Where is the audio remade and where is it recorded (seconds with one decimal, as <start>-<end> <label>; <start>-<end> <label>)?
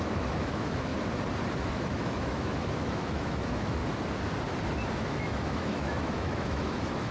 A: 0.0-0.9 remade; 0.9-1.6 recorded; 1.6-3.8 remade; 3.8-4.9 recorded; 4.9-7.1 remade